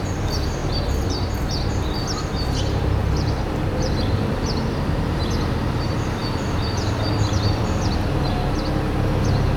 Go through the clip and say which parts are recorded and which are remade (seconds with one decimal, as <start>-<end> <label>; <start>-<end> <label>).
0.0-0.6 recorded; 0.6-1.4 remade; 1.4-3.0 recorded; 3.0-4.3 remade; 4.3-6.2 recorded; 6.2-7.9 remade; 7.9-9.6 recorded